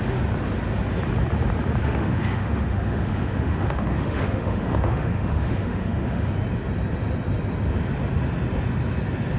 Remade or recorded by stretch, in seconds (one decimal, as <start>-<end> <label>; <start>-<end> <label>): 0.0-1.8 recorded; 1.8-6.3 remade; 6.3-9.4 recorded